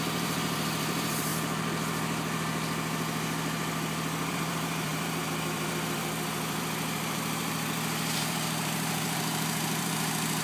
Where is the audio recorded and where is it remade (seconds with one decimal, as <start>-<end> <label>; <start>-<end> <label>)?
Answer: 0.0-1.3 remade; 1.3-4.3 recorded; 4.3-10.4 remade